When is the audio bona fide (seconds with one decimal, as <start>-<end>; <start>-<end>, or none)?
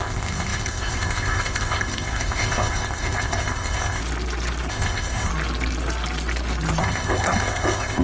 4.0-4.7; 5.3-6.8